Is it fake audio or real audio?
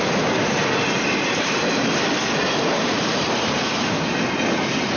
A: real